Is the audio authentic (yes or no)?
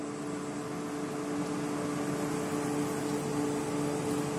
yes